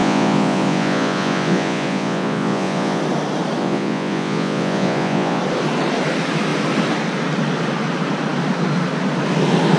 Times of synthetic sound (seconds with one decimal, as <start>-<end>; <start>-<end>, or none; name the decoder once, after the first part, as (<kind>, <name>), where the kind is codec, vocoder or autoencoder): 0.0-3.0 (vocoder, Vocos); 3.6-5.4